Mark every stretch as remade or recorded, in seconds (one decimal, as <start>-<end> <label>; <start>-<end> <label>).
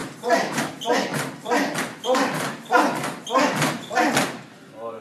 0.0-0.7 remade; 0.7-5.0 recorded